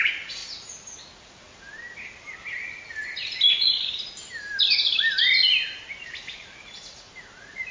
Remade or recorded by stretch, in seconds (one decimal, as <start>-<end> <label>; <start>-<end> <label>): 0.0-0.4 remade; 0.4-1.0 recorded; 1.0-1.7 remade; 1.7-6.2 recorded; 6.2-7.7 remade